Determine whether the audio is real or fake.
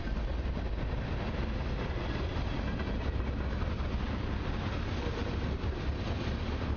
real